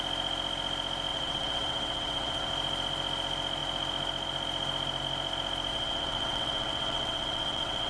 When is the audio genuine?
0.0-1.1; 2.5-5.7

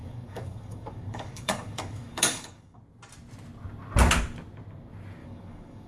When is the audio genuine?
2.8-5.2

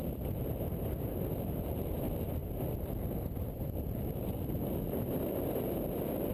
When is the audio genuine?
0.0-6.3

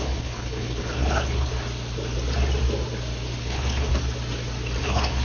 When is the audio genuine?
1.5-3.4; 3.9-4.8